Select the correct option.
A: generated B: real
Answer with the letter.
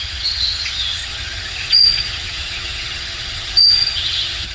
A